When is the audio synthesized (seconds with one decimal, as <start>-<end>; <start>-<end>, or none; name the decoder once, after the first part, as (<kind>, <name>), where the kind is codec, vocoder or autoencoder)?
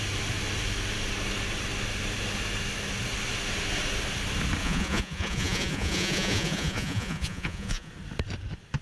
4.6-7.9 (vocoder, Vocos)